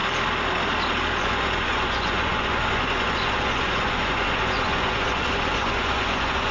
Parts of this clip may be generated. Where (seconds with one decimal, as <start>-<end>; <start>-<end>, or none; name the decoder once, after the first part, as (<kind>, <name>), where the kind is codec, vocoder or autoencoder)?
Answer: 1.2-6.5 (vocoder, Vocos)